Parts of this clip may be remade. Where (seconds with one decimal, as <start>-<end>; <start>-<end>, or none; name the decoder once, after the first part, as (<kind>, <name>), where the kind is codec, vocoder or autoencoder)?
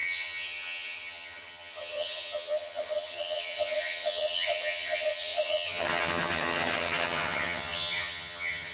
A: 0.0-8.7 (vocoder, HiFi-GAN)